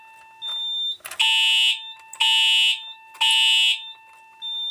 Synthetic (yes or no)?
no